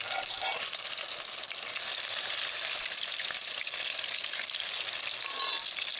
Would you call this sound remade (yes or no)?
no